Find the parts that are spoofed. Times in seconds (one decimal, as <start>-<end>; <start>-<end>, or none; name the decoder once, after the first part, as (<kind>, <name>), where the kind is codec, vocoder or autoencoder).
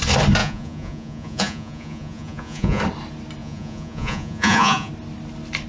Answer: 0.4-2.8 (vocoder, Vocos); 3.4-4.9